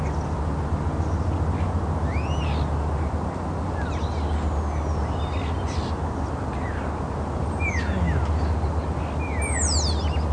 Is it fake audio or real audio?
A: real